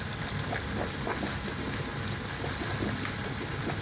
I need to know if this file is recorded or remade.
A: recorded